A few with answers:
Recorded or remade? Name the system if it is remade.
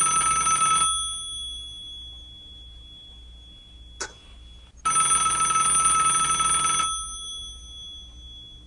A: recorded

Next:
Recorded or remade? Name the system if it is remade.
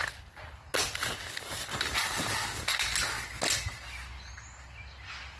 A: recorded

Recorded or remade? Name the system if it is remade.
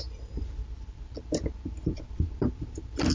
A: recorded